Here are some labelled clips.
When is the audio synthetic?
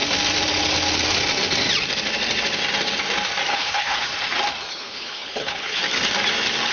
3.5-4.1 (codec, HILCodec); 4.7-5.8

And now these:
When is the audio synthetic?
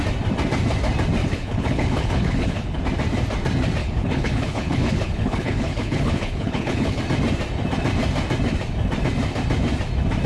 1.2-2.8 (codec, HILCodec); 3.8-7.0